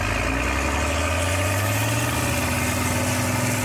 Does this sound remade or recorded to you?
recorded